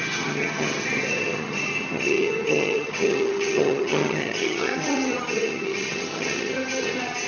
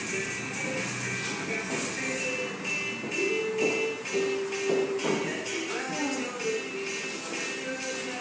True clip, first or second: second